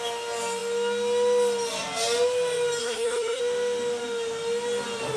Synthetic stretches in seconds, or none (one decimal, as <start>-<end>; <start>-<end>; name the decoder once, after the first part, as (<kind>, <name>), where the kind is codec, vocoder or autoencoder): 2.8-3.4 (codec, SNAC)